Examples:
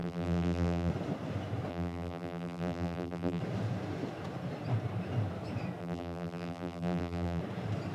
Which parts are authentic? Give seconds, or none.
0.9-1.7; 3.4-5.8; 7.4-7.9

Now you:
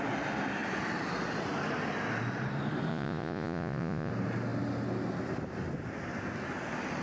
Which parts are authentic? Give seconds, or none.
0.0-2.9; 4.1-7.0